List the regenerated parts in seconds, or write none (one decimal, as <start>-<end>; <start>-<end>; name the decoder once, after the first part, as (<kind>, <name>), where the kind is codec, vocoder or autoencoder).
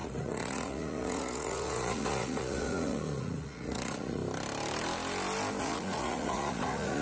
0.0-4.2 (vocoder, Vocos); 5.6-7.0